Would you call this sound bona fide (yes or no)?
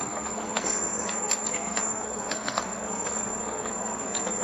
no